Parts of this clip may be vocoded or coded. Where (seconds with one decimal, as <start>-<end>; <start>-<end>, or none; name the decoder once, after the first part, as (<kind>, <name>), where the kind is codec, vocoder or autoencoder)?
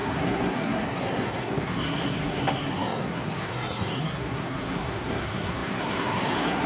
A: 0.0-6.7 (codec, SNAC)